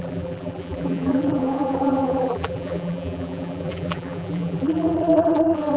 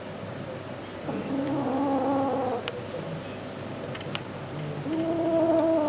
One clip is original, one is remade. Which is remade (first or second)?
first